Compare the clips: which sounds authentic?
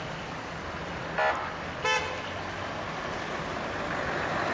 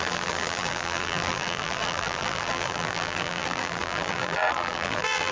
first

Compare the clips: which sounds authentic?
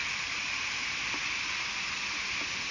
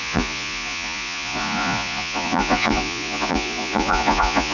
first